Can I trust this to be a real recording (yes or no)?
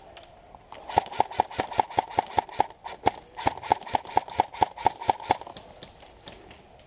yes